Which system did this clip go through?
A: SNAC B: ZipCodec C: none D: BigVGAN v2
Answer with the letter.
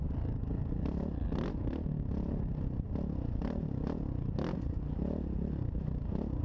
C